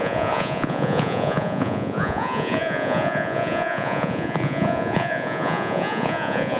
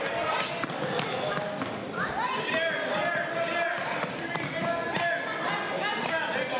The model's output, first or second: first